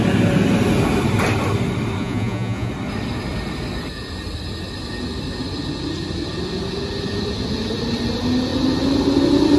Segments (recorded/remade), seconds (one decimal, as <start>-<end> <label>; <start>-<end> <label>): 0.0-2.0 recorded; 2.0-2.7 remade; 2.7-9.6 recorded